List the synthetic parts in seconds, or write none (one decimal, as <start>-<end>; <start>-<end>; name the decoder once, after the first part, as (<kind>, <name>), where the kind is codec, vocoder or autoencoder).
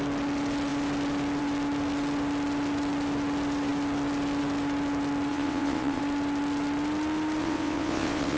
5.3-6.0 (vocoder, WaveNeXt); 7.4-8.4